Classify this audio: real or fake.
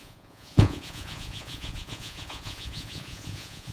fake